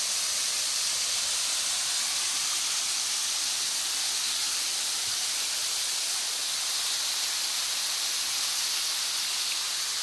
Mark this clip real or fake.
real